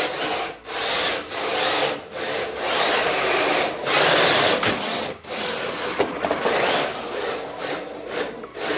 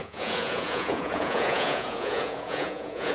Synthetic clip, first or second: second